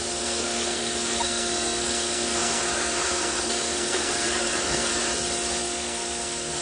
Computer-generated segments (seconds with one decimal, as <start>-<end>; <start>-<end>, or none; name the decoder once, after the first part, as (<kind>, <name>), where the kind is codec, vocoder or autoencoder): 0.0-4.9 (codec, SNAC); 5.6-6.6